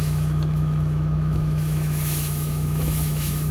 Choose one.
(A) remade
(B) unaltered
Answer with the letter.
A